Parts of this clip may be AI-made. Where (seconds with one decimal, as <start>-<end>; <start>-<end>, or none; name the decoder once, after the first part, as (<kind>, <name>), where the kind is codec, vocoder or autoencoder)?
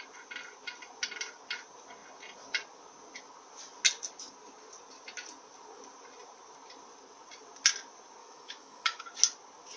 8.2-9.0 (autoencoder, DAC-VAE)